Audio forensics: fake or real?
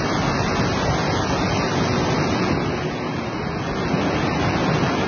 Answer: real